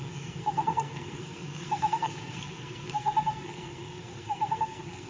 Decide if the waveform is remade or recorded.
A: remade